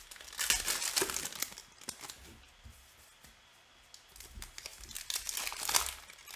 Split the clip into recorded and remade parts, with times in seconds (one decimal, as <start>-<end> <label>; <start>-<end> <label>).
0.0-6.4 recorded